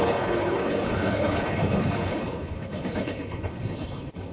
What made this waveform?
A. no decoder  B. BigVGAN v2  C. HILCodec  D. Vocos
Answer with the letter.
C